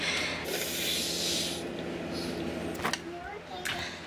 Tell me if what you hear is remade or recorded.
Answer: recorded